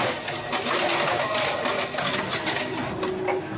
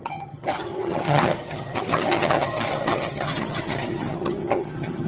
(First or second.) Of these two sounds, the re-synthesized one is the second